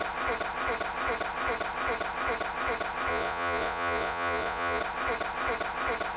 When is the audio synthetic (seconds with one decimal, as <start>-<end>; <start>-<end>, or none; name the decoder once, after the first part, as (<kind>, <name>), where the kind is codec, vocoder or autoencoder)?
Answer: 3.1-4.8 (vocoder, Vocos)